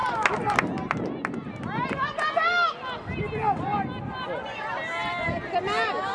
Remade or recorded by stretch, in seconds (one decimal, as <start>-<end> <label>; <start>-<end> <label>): 0.0-6.1 recorded